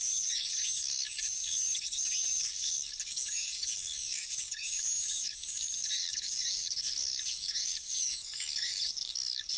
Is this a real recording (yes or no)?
no